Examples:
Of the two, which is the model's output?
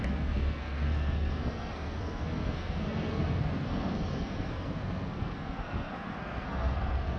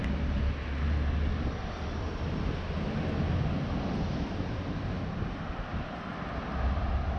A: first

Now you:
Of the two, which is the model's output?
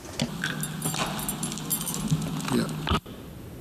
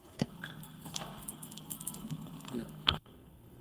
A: second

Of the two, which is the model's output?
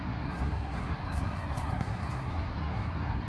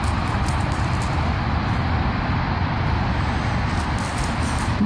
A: first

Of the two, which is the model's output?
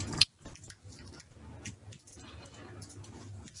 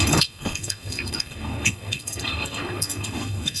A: second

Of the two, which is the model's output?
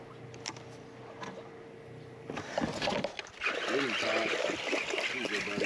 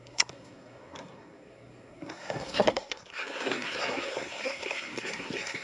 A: second